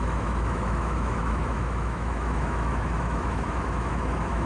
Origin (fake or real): fake